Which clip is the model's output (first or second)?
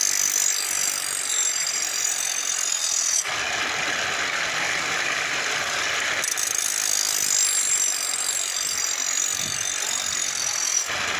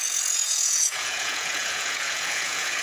second